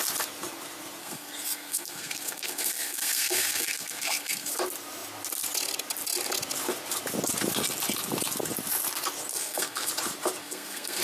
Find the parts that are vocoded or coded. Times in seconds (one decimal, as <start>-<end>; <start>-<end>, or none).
1.0-4.5; 9.3-9.9; 10.4-11.0